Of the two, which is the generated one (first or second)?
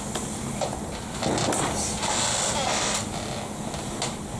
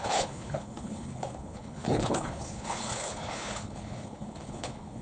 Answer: second